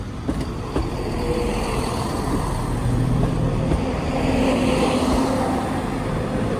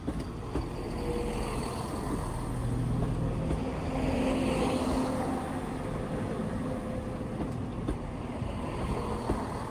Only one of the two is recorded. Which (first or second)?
second